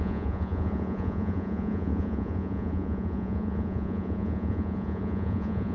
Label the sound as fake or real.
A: fake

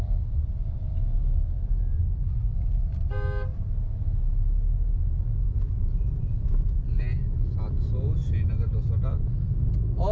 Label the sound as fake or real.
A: real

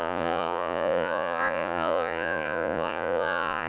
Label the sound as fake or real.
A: fake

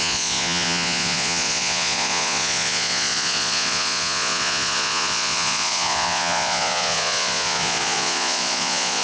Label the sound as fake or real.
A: fake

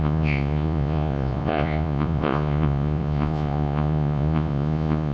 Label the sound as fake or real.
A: fake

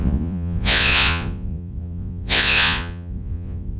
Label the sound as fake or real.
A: fake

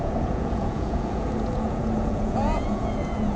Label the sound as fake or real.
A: fake